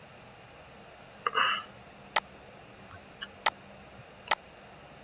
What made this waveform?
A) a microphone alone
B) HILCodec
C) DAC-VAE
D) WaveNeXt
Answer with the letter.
A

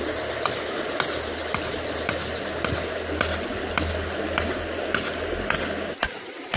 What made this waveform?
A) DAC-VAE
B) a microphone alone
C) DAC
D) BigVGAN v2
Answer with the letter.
B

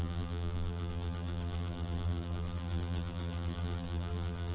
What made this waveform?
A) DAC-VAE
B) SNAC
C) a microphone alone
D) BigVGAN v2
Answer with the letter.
D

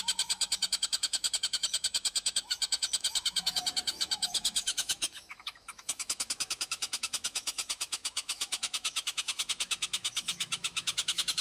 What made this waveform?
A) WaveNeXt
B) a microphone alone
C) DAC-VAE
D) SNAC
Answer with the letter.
C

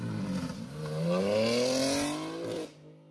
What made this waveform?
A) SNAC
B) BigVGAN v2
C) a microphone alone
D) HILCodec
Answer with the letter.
C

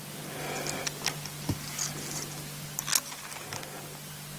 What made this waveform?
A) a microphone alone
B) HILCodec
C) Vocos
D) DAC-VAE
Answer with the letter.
A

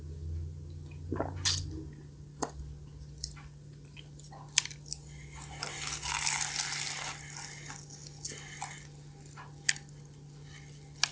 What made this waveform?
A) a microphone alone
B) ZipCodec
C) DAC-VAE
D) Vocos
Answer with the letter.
A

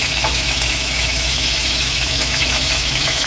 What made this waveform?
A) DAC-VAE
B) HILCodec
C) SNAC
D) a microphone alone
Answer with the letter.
A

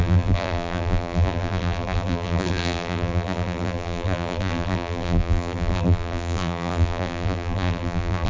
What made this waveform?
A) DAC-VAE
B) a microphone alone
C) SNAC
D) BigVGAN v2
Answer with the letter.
D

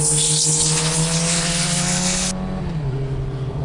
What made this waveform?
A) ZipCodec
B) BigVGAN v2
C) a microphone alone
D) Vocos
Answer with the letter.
C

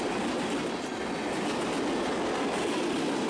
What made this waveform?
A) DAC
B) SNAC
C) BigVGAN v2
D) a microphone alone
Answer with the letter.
D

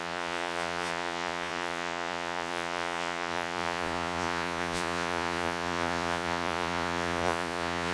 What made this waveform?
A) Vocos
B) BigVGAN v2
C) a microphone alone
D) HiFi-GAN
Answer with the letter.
A